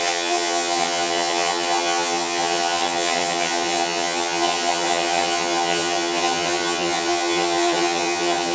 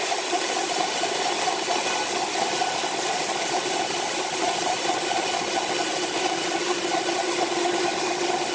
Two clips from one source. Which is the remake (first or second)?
first